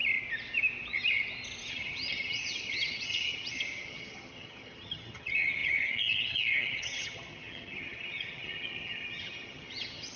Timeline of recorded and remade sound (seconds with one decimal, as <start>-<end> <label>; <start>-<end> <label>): 0.0-1.7 recorded; 1.7-10.2 remade